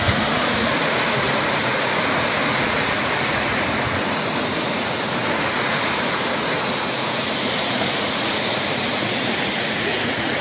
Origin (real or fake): fake